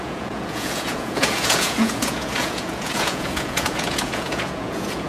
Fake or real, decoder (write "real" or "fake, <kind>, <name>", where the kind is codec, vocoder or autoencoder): fake, vocoder, Vocos